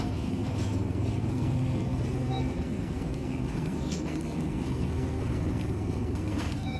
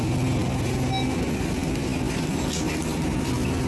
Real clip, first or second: second